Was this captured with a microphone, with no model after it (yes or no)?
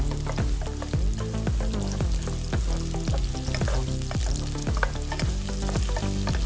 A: yes